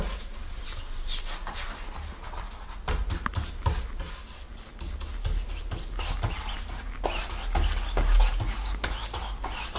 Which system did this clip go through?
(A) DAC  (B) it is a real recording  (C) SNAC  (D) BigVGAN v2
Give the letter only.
B